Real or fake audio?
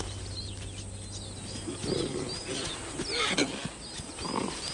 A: real